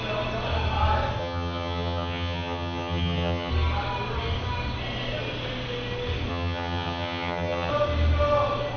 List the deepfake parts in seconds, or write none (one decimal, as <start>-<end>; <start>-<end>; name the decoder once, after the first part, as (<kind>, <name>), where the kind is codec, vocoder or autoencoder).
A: 1.2-3.5 (vocoder, HiFi-GAN); 6.3-7.7